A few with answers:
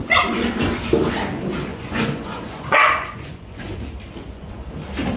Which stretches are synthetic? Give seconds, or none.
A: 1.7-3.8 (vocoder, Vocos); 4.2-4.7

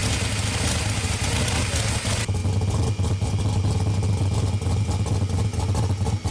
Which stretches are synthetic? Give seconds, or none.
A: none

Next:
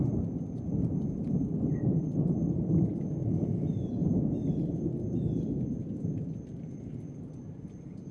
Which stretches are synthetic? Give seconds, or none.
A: none

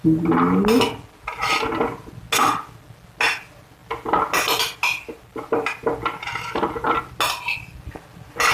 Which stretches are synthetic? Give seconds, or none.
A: none

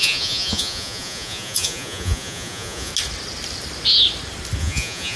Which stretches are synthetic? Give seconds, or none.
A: 0.0-2.9 (vocoder, Vocos); 4.6-5.2

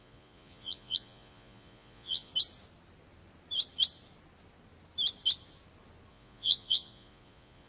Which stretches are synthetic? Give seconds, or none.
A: 0.0-2.3 (vocoder, Vocos); 6.1-7.7